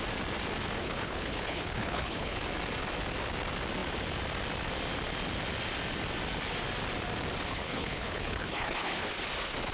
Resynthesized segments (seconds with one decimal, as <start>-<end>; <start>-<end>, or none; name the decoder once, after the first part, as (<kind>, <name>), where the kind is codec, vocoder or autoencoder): 0.8-2.4 (codec, HILCodec); 7.5-9.1